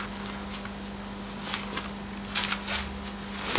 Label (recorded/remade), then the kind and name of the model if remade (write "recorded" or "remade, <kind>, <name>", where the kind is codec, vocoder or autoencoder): recorded